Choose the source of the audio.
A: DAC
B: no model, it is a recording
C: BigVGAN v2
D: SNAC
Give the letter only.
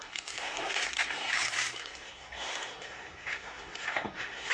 D